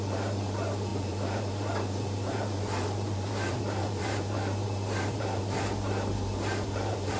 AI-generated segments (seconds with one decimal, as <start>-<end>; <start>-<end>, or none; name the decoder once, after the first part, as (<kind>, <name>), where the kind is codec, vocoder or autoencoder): 0.0-7.2 (vocoder, BigVGAN v2)